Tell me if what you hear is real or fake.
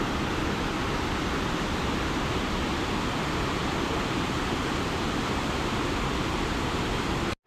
real